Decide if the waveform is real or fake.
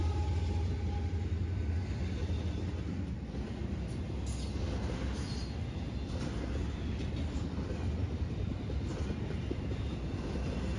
real